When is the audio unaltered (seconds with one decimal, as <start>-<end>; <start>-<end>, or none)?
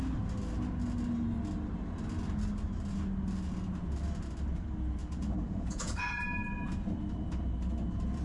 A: 0.0-5.0; 6.2-8.2